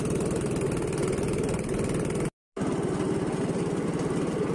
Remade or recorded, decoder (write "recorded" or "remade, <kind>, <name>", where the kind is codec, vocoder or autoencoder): remade, vocoder, BigVGAN v2